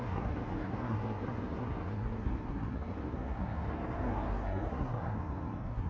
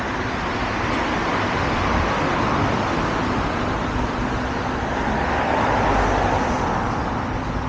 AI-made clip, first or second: first